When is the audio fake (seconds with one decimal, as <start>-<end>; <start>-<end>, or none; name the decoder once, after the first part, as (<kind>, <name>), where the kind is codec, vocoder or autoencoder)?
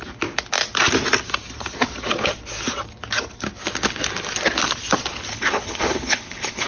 5.3-6.7 (codec, HILCodec)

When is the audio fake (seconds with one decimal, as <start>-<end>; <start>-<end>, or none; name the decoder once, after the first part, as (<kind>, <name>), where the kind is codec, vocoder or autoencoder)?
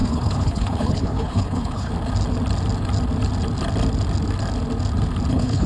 0.0-1.9 (codec, HILCodec); 5.3-5.7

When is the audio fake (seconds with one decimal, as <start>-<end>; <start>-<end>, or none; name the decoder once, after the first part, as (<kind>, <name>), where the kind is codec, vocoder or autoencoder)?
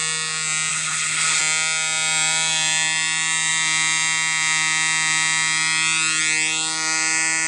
0.7-1.4 (codec, HILCodec)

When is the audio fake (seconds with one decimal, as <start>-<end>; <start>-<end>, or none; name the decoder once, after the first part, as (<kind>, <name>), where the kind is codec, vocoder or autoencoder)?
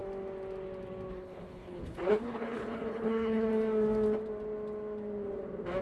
1.1-3.5 (codec, HILCodec)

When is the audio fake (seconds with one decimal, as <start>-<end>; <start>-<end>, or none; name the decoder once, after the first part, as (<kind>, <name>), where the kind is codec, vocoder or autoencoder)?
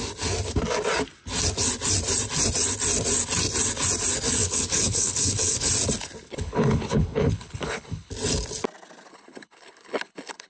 4.4-5.7 (codec, HILCodec); 6.3-8.1; 9.1-10.5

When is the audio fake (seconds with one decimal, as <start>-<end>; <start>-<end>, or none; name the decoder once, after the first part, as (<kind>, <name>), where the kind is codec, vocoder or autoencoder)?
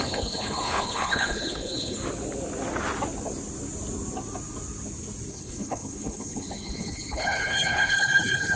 0.0-2.0 (codec, HILCodec); 5.3-8.6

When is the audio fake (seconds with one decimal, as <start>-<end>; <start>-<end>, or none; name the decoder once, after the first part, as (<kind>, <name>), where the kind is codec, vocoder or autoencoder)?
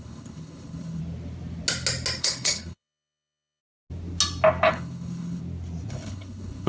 0.0-1.0 (codec, HILCodec); 2.2-3.6; 4.7-5.4; 5.9-6.7